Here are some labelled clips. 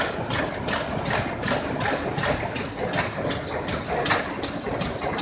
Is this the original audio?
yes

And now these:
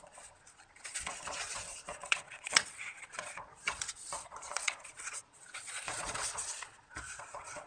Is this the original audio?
no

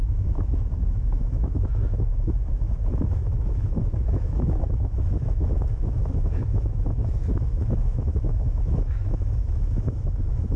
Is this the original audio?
no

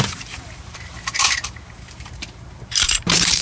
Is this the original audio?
no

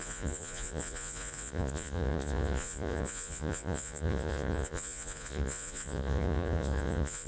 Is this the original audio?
no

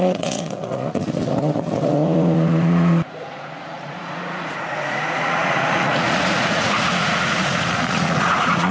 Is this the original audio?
no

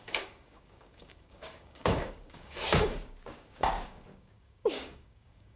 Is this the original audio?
no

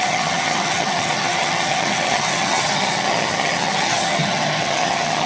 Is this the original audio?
no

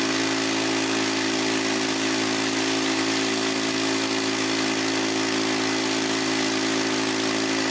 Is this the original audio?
yes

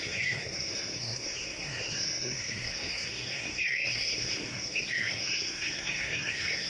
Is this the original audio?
no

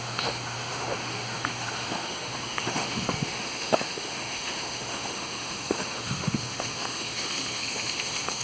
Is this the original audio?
no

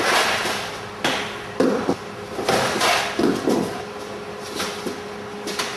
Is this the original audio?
yes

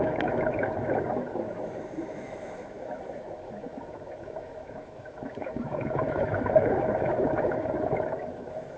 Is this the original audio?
no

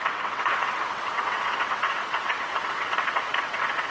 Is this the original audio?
no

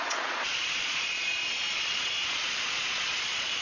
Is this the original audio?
no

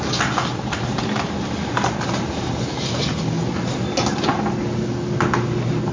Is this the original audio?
yes